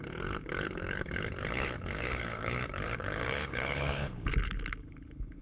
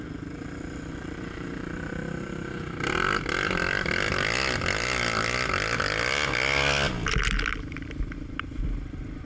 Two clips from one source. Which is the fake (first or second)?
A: first